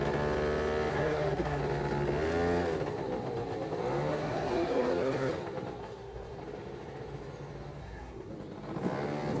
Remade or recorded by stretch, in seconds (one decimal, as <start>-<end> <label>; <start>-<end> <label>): 0.0-0.9 recorded; 0.9-1.6 remade; 1.6-4.1 recorded; 4.1-5.3 remade; 5.3-5.8 recorded; 5.8-6.4 remade; 6.4-7.8 recorded; 7.8-8.3 remade; 8.3-9.4 recorded